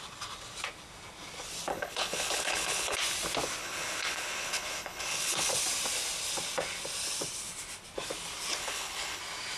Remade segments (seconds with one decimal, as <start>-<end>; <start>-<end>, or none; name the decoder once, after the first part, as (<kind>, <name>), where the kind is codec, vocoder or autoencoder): 1.7-3.0 (codec, HILCodec); 3.6-5.5; 8.6-9.2